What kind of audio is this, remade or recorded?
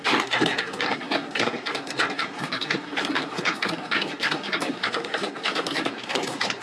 remade